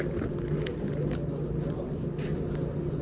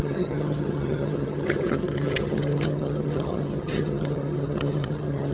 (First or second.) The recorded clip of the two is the first